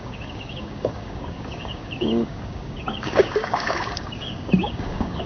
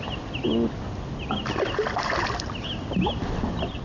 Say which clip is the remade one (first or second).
first